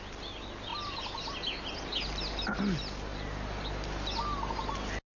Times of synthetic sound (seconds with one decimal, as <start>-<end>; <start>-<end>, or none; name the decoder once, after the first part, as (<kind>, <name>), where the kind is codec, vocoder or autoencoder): none